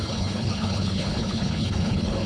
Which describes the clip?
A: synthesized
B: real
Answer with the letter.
A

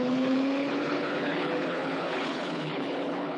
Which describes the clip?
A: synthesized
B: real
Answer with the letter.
A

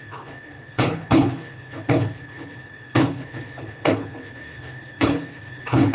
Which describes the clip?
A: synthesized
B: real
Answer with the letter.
A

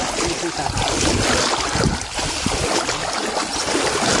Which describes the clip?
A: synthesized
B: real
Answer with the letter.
B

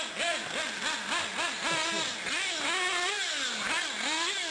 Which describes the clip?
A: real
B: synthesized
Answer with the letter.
A